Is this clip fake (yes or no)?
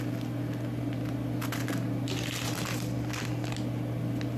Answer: no